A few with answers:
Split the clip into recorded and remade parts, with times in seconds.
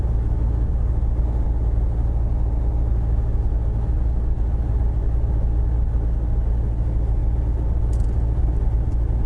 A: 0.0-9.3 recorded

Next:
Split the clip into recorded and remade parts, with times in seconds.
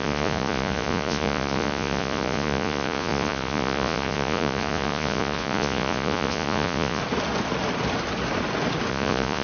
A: 0.0-7.0 remade; 7.0-8.9 recorded; 8.9-9.4 remade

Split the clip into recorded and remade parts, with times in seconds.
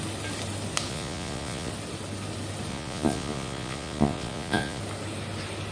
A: 0.0-0.9 recorded; 0.9-1.7 remade; 1.7-2.7 recorded; 2.7-4.8 remade; 4.8-5.7 recorded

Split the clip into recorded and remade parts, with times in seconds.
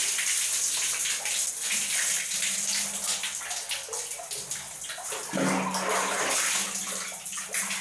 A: 0.0-7.8 recorded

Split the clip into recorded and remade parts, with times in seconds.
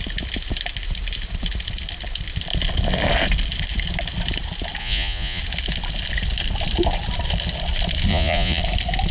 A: 0.0-4.8 recorded; 4.8-5.4 remade; 5.4-8.1 recorded; 8.1-8.6 remade; 8.6-9.1 recorded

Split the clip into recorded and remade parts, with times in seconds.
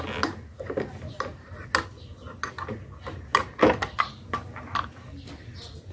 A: 0.0-5.9 recorded